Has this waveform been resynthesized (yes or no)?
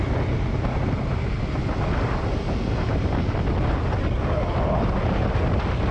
no